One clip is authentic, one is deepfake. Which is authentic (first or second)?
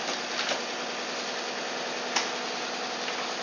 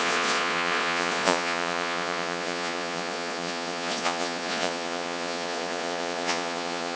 first